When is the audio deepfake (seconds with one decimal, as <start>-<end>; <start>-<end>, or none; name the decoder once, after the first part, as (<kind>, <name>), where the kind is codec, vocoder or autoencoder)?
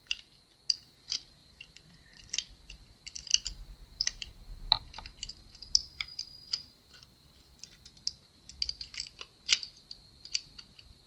1.4-2.6 (vocoder, BigVGAN v2); 3.3-4.3